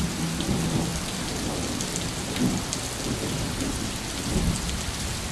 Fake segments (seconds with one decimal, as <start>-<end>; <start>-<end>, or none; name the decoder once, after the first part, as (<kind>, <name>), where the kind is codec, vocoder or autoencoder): none